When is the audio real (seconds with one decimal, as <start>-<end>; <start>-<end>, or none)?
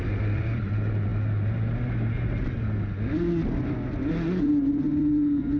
0.0-5.6